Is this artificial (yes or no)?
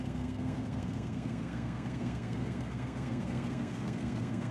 yes